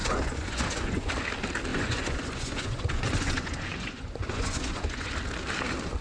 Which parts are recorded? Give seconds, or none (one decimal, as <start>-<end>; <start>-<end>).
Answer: 1.1-1.7; 5.1-6.0